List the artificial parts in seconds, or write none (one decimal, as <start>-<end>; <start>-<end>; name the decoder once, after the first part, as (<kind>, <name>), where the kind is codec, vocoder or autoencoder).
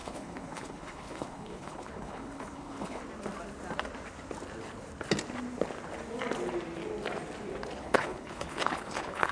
0.0-3.0 (codec, HILCodec); 7.8-9.3